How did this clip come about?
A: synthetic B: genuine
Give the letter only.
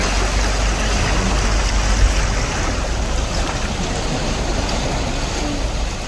B